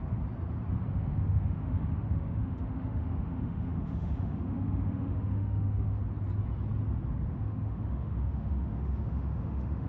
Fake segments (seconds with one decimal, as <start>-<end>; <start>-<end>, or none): 0.9-6.0; 7.3-9.9